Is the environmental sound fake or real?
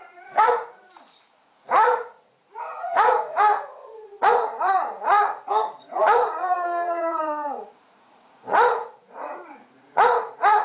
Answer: fake